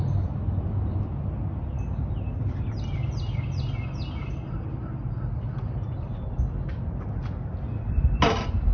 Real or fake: real